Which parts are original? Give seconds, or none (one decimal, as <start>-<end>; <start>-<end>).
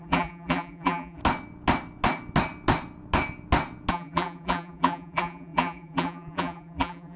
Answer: 1.2-3.9